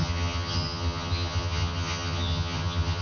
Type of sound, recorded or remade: remade